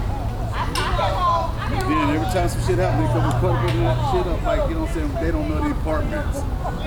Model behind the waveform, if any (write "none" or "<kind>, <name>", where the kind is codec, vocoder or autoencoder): none